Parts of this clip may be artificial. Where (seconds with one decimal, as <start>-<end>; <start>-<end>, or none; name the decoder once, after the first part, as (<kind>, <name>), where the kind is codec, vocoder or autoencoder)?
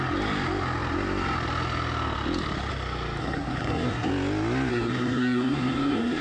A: 3.2-4.1 (codec, SNAC); 4.7-6.2